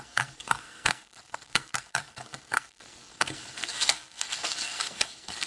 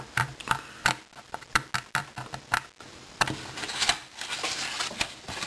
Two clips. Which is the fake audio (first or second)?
first